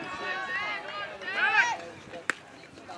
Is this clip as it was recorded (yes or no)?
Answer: yes